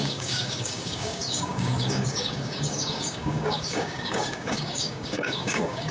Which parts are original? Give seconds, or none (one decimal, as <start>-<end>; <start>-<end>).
none